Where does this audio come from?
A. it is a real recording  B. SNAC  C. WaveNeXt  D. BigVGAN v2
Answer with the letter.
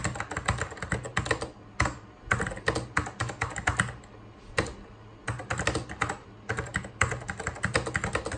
A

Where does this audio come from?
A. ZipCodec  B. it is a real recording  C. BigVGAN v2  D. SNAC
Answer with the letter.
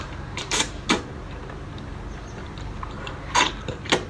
C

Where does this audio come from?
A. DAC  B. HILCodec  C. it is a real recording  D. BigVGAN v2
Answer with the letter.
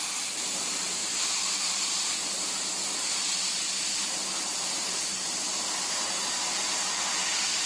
D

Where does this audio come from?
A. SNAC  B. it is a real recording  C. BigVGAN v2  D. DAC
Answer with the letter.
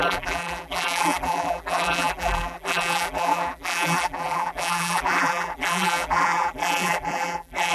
C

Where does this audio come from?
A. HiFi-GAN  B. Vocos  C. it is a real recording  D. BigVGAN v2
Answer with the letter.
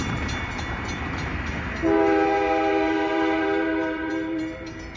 D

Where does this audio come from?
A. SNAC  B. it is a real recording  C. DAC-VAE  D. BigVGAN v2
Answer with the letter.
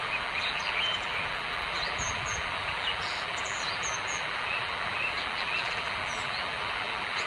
D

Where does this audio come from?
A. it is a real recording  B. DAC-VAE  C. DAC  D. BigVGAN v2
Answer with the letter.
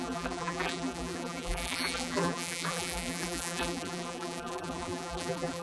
D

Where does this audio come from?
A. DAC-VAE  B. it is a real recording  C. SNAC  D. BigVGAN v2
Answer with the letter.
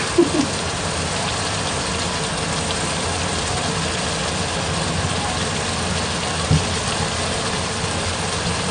B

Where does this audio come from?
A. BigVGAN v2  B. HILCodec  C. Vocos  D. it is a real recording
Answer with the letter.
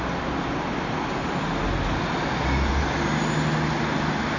D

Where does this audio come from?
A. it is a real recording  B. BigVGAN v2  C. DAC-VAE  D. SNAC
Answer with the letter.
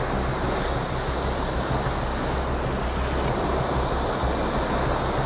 A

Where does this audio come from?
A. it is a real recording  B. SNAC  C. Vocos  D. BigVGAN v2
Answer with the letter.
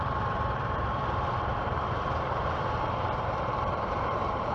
D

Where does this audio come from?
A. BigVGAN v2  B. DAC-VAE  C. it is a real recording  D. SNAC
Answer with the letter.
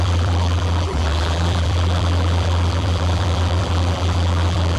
A